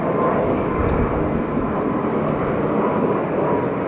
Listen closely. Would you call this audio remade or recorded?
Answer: recorded